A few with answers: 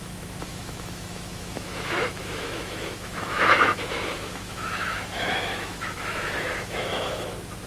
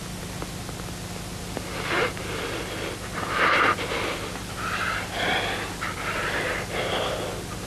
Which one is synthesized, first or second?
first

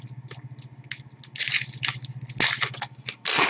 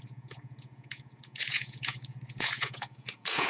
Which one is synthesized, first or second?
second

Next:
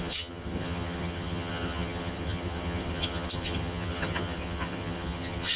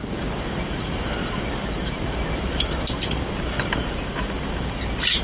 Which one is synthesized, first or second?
first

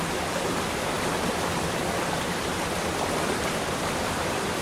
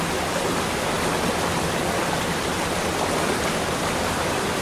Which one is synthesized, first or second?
first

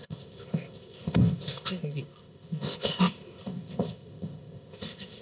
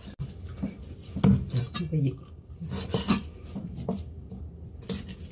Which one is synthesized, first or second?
first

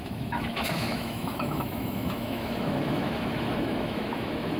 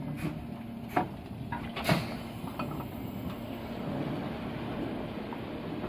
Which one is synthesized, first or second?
first